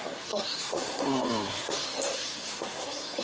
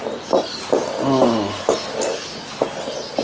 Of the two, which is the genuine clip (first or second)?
second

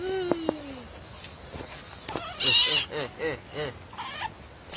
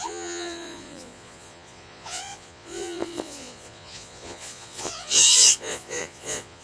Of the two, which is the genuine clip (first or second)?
first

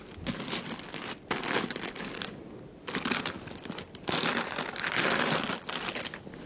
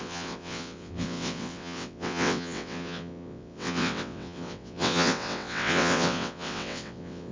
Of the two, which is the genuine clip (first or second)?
first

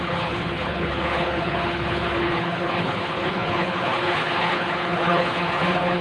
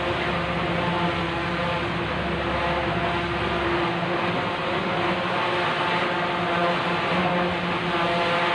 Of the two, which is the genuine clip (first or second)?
second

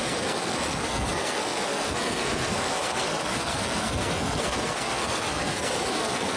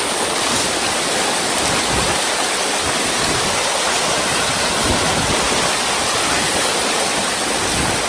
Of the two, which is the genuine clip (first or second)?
second